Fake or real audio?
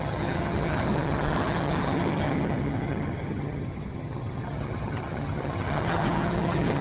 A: fake